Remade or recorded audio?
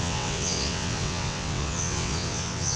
remade